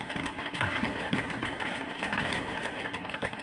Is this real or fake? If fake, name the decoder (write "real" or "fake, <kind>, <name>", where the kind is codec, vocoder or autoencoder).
fake, codec, SNAC